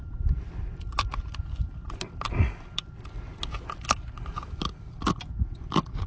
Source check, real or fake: real